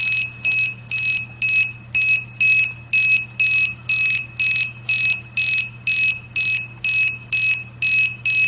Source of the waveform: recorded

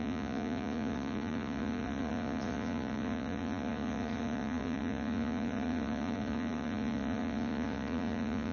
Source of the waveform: remade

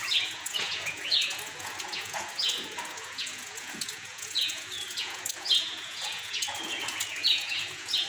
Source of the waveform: remade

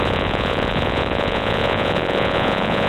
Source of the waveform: remade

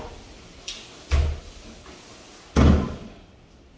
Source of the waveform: recorded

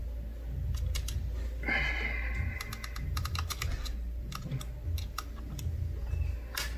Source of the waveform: recorded